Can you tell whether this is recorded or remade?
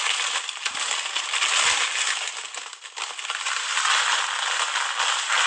recorded